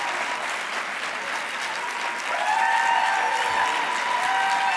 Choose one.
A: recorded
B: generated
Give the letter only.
A